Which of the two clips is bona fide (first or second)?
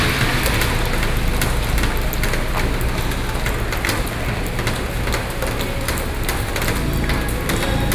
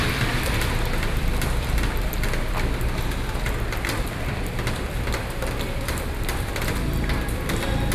first